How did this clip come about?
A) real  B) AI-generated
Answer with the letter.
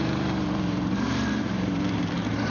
B